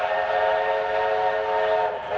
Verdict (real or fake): real